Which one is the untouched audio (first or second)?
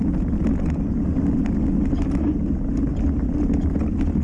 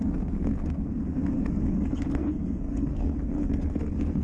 first